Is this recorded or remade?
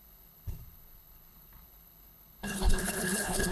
remade